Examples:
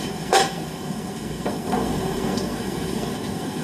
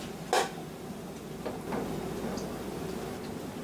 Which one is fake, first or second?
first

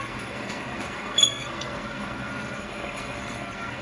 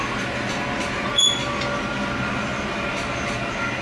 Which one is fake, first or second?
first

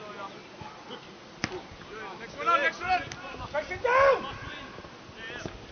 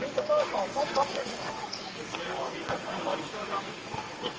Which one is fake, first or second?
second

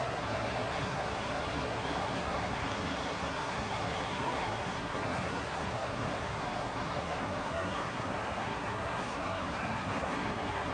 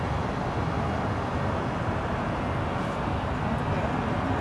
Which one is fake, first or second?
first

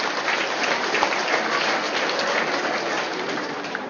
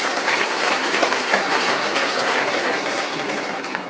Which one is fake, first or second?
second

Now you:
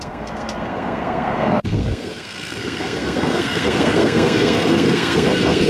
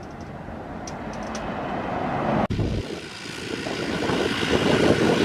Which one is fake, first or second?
first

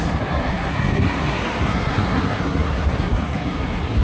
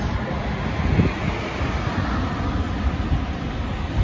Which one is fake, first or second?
first